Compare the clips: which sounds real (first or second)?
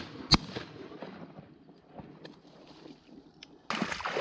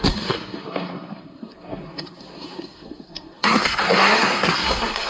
first